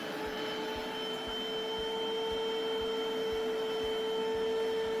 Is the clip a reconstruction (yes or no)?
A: no